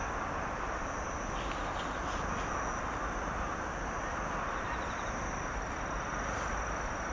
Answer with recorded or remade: recorded